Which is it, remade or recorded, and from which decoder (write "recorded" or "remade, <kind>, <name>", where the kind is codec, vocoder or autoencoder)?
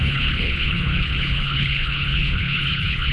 remade, codec, HILCodec